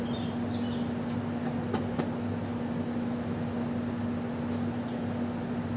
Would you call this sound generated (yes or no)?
no